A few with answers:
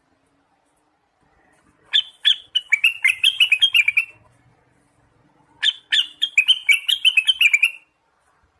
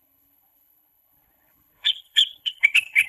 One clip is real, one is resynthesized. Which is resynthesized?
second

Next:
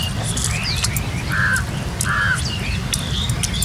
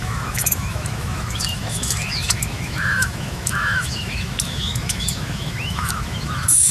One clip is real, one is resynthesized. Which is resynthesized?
second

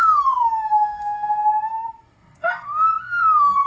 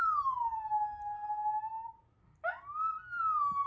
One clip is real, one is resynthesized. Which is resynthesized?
first